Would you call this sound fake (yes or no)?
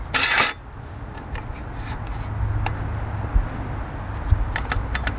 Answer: no